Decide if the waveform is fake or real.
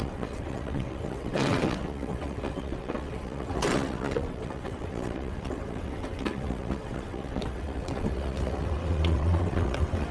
fake